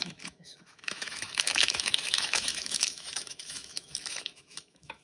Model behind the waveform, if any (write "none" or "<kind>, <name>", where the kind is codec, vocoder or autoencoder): autoencoder, DAC-VAE